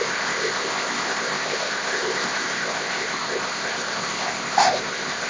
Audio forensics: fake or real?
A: fake